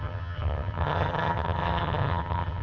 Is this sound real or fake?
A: fake